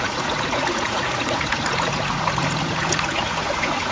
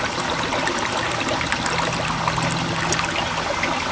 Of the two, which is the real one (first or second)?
second